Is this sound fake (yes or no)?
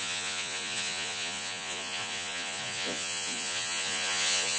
yes